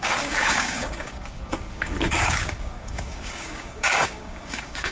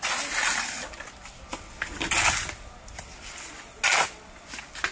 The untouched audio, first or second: second